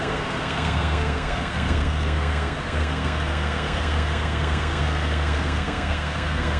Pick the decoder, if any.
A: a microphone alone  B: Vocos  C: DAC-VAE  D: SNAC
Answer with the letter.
D